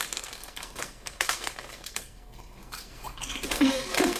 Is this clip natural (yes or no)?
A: no